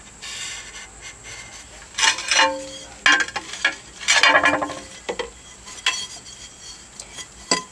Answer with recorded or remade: recorded